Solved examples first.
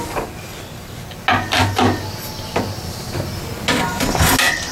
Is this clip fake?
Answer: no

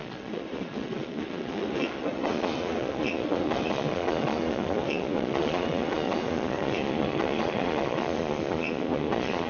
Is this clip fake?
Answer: yes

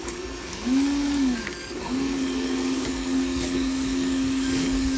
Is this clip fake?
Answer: yes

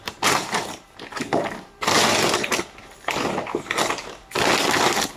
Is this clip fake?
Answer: no